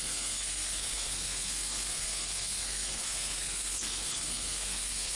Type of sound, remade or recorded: remade